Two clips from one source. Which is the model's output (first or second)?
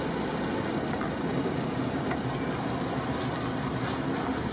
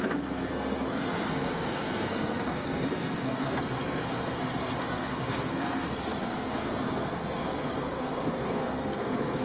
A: second